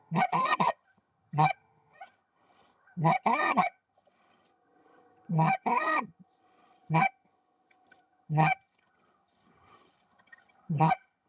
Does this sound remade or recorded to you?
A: remade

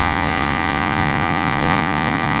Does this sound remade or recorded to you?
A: remade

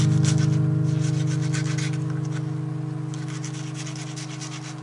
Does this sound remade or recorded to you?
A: recorded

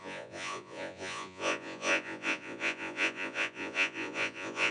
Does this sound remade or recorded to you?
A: remade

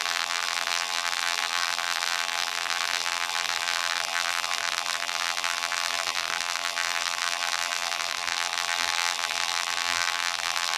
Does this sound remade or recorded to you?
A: remade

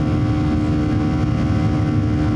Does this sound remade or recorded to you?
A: recorded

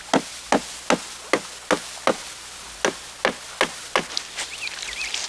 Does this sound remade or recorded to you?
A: recorded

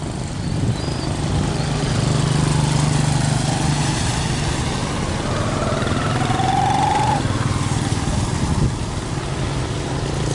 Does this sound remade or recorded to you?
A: recorded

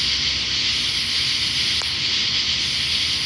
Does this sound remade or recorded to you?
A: recorded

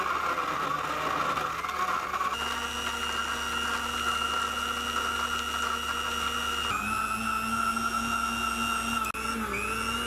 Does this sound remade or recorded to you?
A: recorded